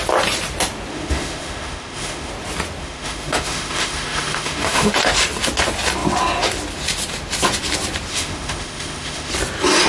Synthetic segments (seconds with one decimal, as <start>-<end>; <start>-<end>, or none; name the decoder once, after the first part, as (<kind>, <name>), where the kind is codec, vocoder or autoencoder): 0.9-2.3 (autoencoder, DAC-VAE); 2.8-4.9; 8.1-9.3